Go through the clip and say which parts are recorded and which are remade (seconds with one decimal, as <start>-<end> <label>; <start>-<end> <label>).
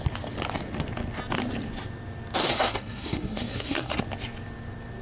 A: 0.0-2.4 recorded; 2.4-4.0 remade; 4.0-5.0 recorded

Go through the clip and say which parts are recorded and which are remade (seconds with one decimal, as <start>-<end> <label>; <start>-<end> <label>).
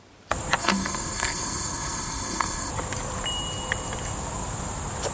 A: 0.0-0.6 recorded; 0.6-2.7 remade; 2.7-5.1 recorded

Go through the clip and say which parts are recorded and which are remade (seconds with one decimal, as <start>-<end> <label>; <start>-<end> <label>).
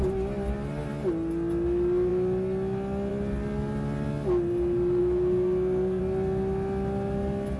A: 0.0-5.0 recorded; 5.0-6.0 remade; 6.0-7.6 recorded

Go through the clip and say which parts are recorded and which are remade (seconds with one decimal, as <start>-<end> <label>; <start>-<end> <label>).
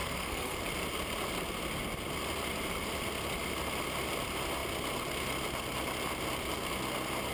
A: 0.0-0.6 remade; 0.6-7.3 recorded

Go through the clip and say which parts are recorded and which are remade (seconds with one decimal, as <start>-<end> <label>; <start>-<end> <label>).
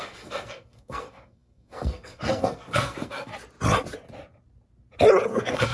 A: 0.0-3.3 remade; 3.3-5.3 recorded; 5.3-5.7 remade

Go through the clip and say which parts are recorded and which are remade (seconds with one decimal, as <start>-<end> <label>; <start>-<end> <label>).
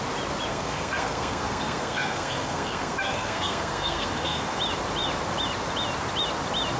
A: 0.0-0.5 recorded; 0.5-4.6 remade; 4.6-6.8 recorded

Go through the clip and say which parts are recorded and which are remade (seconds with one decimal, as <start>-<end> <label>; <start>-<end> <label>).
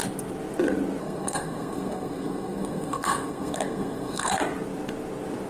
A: 0.0-1.0 recorded; 1.0-4.3 remade; 4.3-5.5 recorded